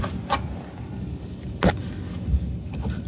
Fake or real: real